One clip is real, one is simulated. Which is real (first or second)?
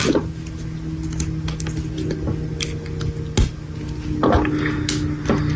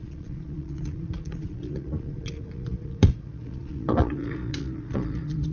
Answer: first